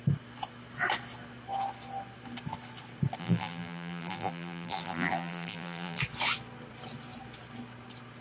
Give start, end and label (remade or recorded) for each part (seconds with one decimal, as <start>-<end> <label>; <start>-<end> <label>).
0.0-3.2 recorded; 3.2-6.0 remade; 6.0-8.2 recorded